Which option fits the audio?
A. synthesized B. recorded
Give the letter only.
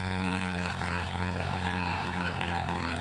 A